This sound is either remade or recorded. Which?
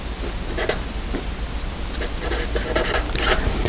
recorded